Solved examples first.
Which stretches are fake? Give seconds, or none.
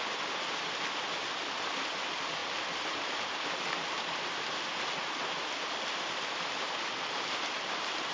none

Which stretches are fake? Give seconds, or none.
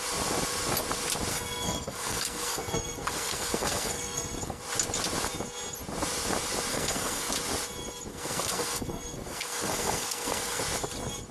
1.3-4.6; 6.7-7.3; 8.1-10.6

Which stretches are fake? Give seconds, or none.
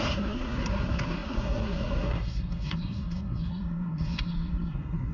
0.0-5.1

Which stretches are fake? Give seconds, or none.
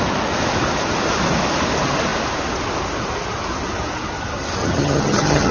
4.6-5.5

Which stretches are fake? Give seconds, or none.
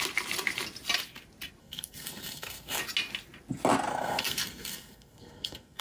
1.6-2.8; 3.9-5.8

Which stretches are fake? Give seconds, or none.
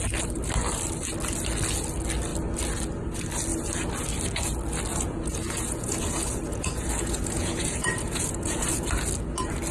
4.9-8.9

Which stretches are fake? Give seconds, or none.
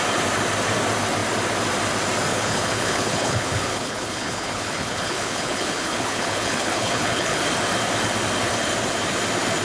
2.3-7.4